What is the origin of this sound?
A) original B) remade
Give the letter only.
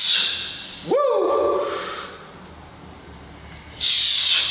A